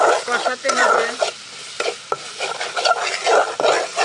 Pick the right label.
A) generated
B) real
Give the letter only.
B